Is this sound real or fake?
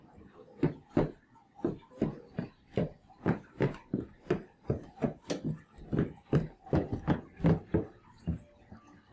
real